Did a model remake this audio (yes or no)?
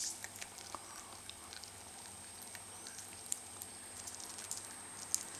no